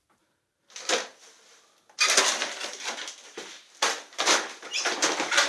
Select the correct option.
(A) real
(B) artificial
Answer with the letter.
A